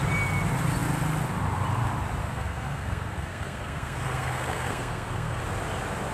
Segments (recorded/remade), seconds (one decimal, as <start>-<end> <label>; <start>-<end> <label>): 0.0-2.2 recorded; 2.2-5.4 remade; 5.4-6.1 recorded